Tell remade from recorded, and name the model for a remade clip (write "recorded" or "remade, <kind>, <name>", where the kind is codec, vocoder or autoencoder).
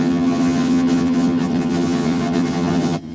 remade, vocoder, HiFi-GAN